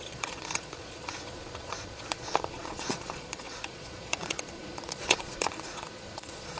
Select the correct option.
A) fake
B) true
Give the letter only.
A